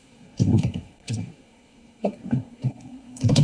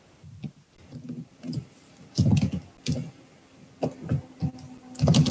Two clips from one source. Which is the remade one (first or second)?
first